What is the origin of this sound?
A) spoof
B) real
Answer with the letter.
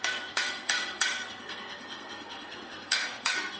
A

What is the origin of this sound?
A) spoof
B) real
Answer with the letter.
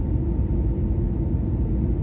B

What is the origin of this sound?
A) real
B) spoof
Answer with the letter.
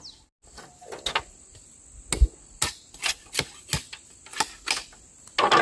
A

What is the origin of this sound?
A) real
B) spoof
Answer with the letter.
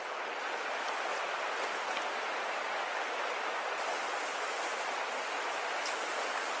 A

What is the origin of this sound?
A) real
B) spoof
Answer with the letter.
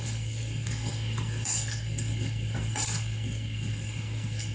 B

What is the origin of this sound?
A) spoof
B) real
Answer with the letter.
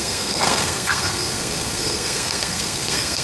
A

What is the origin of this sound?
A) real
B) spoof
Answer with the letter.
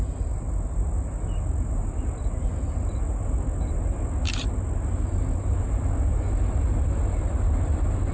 A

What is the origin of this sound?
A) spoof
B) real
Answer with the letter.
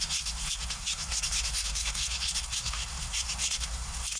A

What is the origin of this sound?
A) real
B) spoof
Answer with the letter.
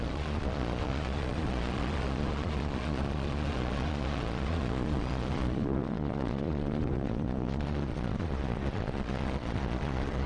B